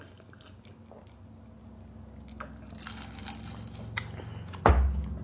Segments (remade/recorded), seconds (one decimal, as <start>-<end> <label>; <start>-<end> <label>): 0.0-5.2 recorded